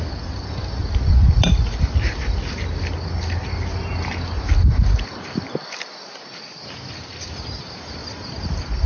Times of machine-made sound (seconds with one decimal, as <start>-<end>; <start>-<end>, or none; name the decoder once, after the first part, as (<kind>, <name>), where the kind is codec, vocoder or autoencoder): 8.0-8.9 (vocoder, BigVGAN v2)